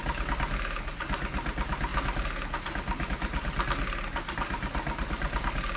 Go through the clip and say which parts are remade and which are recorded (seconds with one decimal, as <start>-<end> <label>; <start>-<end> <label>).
0.0-5.8 recorded